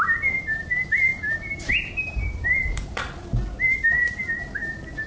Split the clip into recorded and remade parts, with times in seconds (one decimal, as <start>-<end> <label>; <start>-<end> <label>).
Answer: 0.0-1.1 recorded; 1.1-3.0 remade; 3.0-5.1 recorded